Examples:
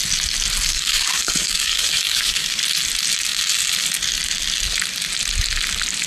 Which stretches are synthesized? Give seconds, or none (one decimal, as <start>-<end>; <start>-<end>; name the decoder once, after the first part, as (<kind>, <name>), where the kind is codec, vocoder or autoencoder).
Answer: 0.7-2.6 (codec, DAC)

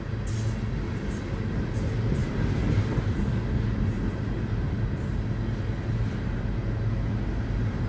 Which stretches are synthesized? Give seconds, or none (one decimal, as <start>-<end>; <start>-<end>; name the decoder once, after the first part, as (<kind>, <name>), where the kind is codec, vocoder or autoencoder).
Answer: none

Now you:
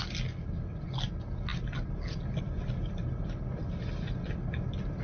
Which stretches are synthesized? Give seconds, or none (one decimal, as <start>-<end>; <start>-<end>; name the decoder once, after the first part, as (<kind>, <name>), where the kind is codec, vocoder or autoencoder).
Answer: none

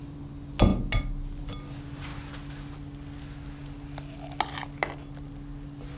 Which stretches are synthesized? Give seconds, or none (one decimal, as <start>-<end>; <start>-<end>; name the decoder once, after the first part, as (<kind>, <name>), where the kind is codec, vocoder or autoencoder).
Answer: none

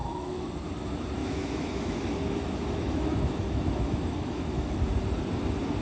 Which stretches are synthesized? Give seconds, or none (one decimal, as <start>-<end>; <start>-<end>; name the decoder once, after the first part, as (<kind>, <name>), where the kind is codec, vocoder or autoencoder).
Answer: 0.0-0.5 (autoencoder, DAC-VAE); 1.2-4.7

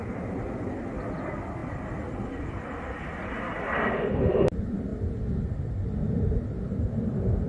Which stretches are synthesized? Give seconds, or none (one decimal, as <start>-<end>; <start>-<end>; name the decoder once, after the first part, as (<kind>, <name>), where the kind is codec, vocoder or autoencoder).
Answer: none

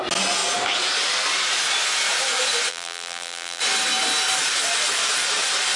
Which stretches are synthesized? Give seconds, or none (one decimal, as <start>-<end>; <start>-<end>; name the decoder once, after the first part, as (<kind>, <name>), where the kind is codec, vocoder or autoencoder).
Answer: 2.7-3.6 (vocoder, BigVGAN v2)

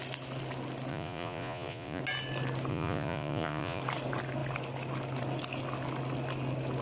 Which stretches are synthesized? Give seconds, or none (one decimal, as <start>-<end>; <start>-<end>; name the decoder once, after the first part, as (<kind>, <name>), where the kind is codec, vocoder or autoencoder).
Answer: 0.9-2.0 (vocoder, Vocos); 2.7-3.8